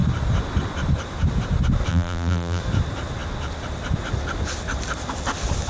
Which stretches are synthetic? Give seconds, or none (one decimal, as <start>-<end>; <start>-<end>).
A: 1.9-2.6